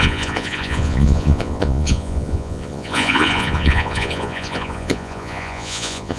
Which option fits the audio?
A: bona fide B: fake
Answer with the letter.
B